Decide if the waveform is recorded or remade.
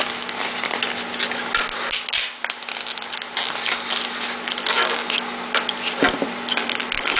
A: recorded